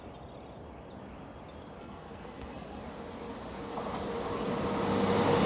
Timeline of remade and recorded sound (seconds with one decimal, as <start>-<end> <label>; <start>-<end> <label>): 0.0-1.8 recorded; 1.8-2.8 remade; 2.8-5.5 recorded

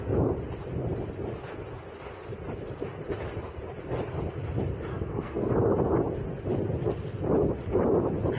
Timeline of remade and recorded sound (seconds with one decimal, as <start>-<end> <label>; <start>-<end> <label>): 0.0-4.9 recorded; 4.9-5.5 remade; 5.5-8.4 recorded

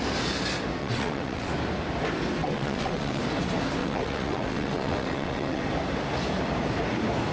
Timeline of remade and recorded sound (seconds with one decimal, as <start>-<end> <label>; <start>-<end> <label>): 0.0-0.8 recorded; 0.8-1.5 remade; 1.5-2.4 recorded; 2.4-3.2 remade; 3.2-3.8 recorded; 3.8-5.6 remade; 5.6-7.3 recorded

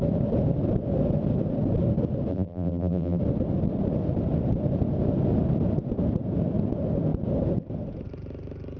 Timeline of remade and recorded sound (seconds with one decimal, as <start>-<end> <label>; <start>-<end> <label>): 0.0-2.3 recorded; 2.3-3.2 remade; 3.2-8.8 recorded

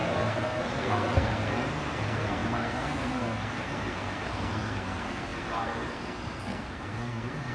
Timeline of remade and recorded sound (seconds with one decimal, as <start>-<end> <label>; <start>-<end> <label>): 0.0-7.5 remade